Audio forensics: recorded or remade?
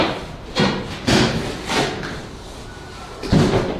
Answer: recorded